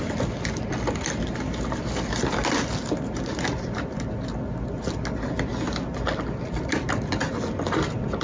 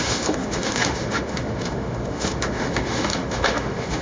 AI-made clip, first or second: second